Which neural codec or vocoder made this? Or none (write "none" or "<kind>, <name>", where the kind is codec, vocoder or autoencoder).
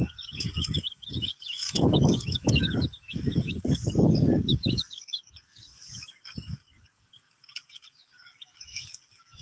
codec, DAC